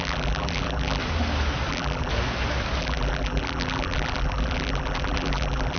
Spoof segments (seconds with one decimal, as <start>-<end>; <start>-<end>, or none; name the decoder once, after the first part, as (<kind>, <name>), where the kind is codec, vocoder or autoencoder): 0.0-1.0 (vocoder, BigVGAN v2); 1.7-2.1; 2.8-5.8